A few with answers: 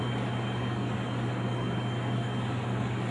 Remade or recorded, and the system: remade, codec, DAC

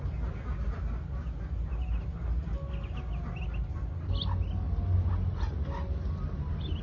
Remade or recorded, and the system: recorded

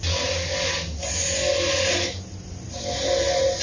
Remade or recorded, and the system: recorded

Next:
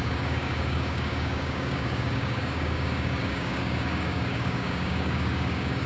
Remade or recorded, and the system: remade, codec, DAC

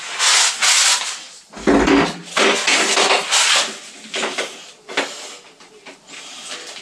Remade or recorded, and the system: recorded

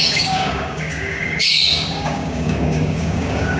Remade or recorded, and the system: remade, codec, DAC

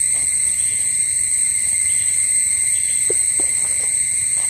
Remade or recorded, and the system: recorded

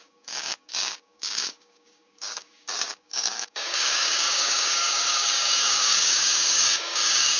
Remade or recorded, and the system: remade, codec, DAC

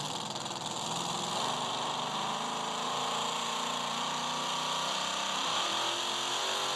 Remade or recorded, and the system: recorded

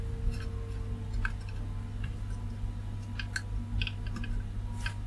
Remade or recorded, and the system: recorded